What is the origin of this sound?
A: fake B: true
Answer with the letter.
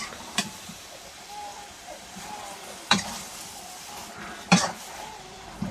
A